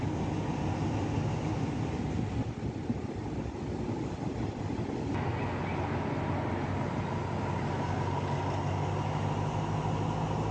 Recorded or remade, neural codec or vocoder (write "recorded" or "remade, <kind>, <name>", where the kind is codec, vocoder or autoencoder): recorded